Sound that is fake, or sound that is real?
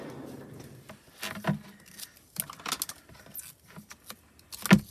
real